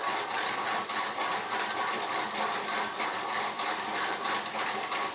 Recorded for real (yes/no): yes